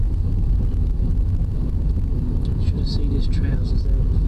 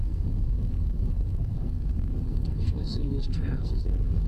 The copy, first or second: second